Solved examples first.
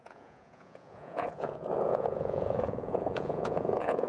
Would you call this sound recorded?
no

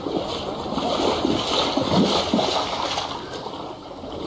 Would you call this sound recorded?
yes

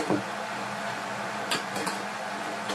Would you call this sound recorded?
no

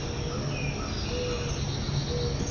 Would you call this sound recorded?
yes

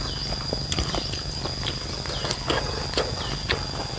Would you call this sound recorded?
yes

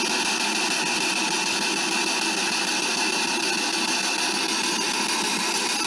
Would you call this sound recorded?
yes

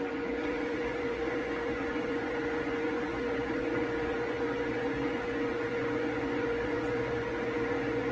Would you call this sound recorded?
no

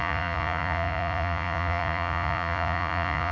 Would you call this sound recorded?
no